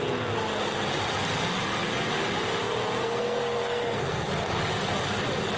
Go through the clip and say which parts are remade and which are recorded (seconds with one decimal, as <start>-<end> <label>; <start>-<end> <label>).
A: 0.0-3.0 recorded; 3.0-4.3 remade; 4.3-5.6 recorded